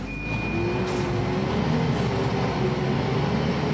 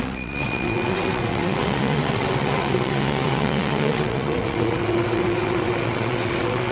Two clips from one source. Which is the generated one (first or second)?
second